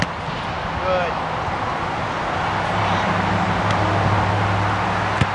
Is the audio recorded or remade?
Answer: recorded